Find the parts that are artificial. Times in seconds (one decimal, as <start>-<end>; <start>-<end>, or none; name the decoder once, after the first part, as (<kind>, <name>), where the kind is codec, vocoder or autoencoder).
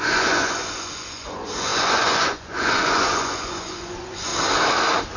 0.0-4.3 (vocoder, Vocos)